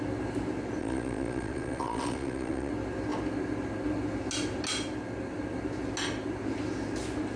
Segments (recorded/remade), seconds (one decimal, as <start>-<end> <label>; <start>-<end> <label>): 0.0-0.8 recorded; 0.8-2.7 remade; 2.7-7.4 recorded